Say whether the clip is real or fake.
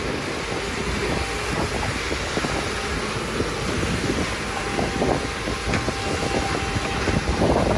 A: real